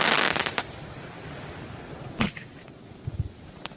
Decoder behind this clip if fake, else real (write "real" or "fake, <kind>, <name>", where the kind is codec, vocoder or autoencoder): real